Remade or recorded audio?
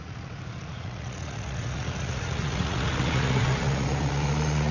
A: remade